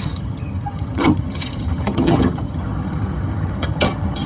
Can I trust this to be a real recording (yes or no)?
no